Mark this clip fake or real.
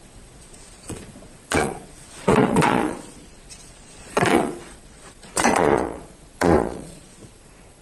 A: fake